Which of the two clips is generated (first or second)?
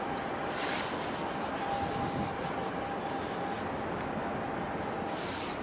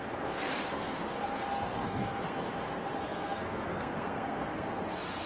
second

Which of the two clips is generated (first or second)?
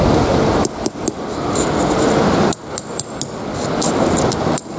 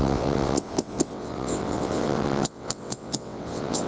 second